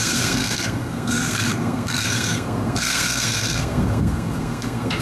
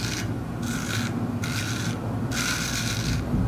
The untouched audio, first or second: second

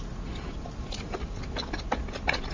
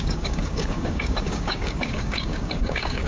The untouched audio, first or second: first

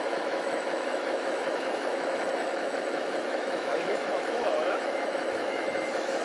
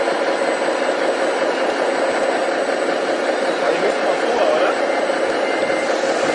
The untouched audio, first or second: second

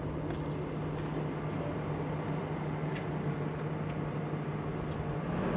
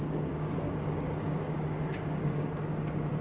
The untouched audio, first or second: first